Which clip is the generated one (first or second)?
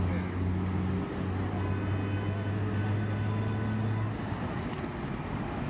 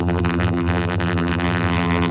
second